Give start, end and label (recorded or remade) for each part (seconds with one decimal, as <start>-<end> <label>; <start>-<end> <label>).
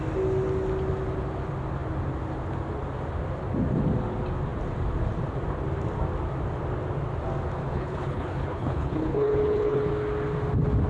0.0-7.6 recorded; 7.6-9.9 remade; 9.9-10.9 recorded